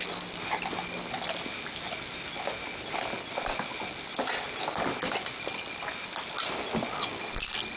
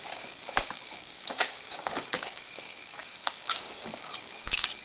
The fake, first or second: second